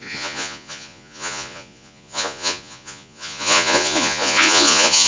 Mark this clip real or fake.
fake